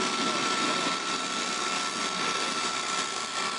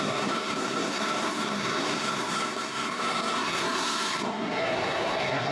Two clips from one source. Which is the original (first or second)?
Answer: first